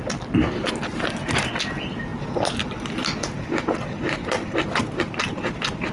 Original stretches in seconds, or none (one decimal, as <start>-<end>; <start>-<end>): 0.0-5.9